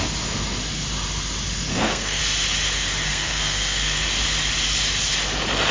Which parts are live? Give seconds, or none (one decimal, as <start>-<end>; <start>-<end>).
0.0-1.7; 2.2-3.1; 4.0-5.7